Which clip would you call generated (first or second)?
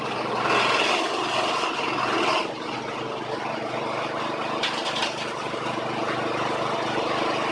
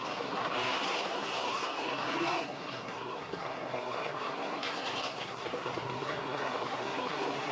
second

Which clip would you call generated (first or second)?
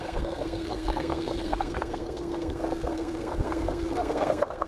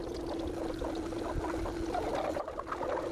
first